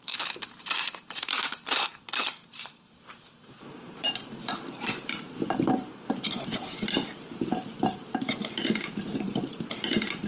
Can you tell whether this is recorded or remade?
remade